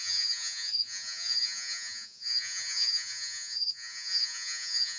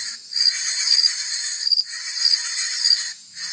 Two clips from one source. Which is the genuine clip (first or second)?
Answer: second